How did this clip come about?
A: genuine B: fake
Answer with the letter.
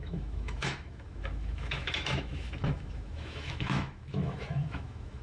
B